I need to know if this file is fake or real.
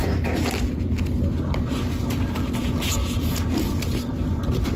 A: real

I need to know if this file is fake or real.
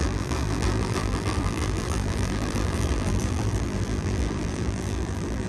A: fake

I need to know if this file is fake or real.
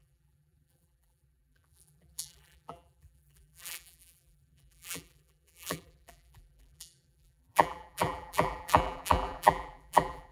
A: fake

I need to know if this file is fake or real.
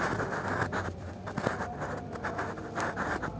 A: real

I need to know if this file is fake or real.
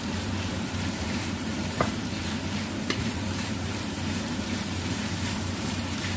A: fake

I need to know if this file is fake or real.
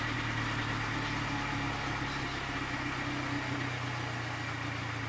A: real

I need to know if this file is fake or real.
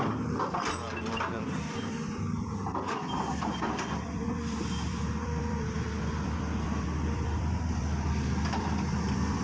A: fake